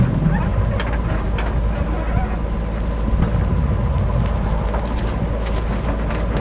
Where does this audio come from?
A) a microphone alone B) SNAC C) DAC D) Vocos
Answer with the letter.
A